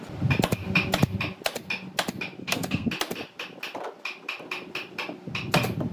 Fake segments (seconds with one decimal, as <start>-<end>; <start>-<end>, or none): 2.4-2.9